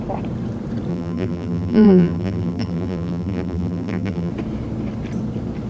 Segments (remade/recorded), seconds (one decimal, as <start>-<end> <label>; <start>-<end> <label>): 0.0-0.9 recorded; 0.9-4.3 remade; 4.3-5.7 recorded